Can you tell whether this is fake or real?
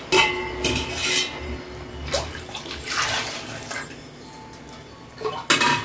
real